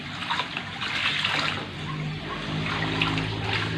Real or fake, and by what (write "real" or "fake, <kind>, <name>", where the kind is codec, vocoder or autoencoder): real